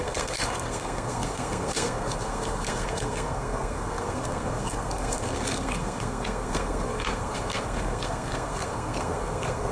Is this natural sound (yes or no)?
no